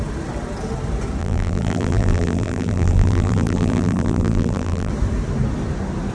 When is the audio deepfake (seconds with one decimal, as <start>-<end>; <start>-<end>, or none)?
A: 1.2-4.9